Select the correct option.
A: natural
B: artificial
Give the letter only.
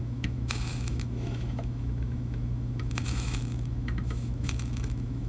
B